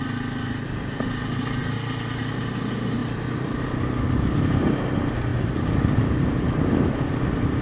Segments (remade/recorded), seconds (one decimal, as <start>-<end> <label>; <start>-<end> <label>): 0.0-3.0 recorded; 3.0-4.0 remade; 4.0-5.3 recorded; 5.3-6.7 remade; 6.7-7.6 recorded